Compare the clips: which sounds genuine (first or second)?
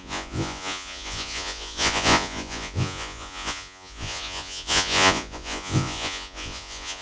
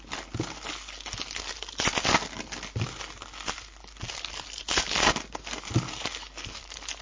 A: second